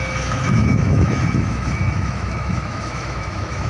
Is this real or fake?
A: fake